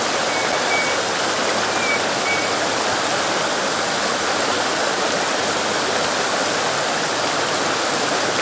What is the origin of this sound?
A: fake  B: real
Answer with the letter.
B